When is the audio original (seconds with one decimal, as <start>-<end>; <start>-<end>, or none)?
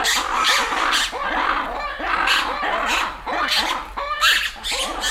0.0-5.1